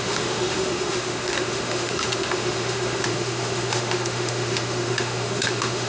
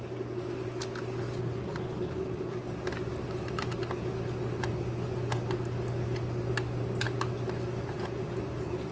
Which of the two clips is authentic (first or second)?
second